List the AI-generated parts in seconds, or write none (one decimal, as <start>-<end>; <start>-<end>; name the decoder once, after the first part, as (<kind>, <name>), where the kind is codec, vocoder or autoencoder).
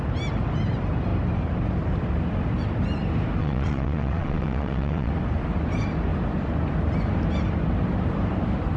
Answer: 3.4-5.1 (vocoder, WaveNeXt)